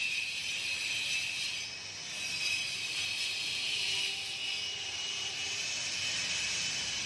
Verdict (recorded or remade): recorded